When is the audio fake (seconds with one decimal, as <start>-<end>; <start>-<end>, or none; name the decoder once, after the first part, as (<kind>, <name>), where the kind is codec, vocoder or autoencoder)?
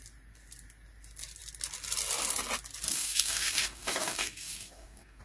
2.9-5.2 (codec, DAC)